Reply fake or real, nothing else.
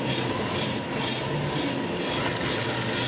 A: real